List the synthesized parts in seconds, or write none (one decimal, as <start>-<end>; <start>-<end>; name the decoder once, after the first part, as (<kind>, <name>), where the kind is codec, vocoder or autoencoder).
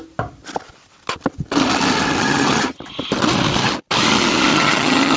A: 2.2-2.8 (vocoder, HiFi-GAN); 4.5-5.2